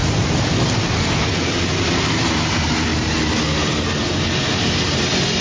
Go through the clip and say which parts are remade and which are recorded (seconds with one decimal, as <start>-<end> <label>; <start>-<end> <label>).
0.0-5.4 recorded